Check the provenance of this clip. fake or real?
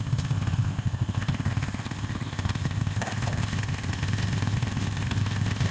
fake